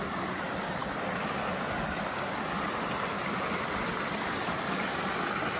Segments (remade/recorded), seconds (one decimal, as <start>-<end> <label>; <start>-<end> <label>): 0.0-5.6 recorded